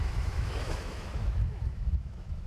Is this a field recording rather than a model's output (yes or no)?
no